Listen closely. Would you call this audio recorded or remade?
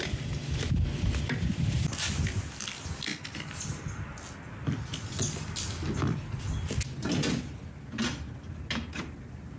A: recorded